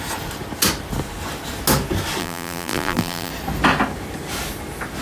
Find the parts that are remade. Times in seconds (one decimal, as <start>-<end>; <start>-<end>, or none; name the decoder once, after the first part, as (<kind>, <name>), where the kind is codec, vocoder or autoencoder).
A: 2.2-3.3 (vocoder, BigVGAN v2)